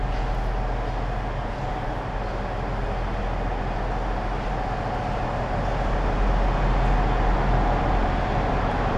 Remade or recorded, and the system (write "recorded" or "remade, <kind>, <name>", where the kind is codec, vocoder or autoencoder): recorded